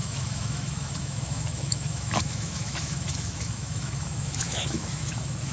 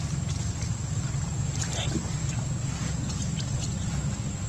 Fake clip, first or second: first